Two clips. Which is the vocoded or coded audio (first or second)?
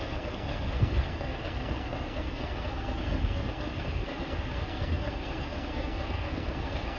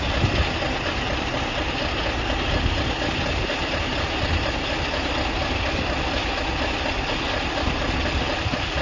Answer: first